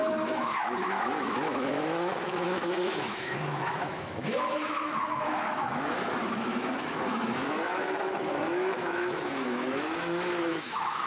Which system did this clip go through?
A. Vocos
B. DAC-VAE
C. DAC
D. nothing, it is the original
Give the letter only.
B